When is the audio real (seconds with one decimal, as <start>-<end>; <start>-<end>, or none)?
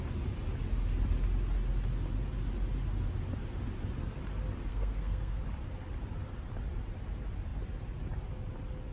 0.0-4.7; 5.4-8.9